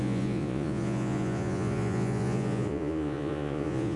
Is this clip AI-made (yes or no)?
yes